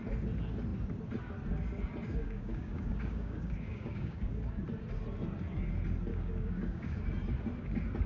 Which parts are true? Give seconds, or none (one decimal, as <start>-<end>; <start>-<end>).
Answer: 0.0-2.2; 4.3-6.1; 7.0-8.1